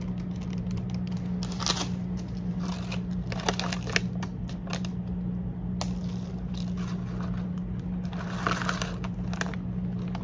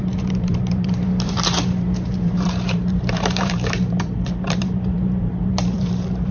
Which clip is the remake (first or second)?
second